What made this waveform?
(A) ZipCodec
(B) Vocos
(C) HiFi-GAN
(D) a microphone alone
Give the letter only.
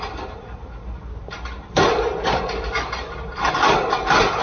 D